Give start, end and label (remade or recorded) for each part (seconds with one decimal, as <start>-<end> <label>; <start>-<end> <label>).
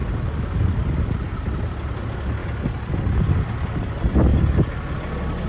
0.0-5.5 recorded